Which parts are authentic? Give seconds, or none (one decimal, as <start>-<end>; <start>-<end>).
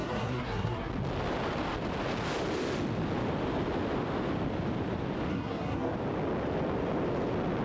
0.9-5.3; 5.9-7.6